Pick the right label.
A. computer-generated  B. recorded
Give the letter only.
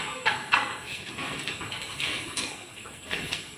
A